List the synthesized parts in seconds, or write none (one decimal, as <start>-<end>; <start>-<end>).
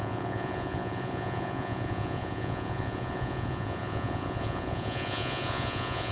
0.0-6.1